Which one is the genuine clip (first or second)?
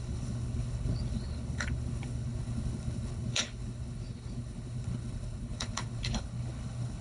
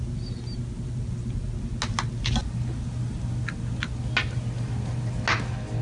second